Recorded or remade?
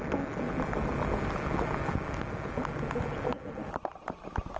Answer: recorded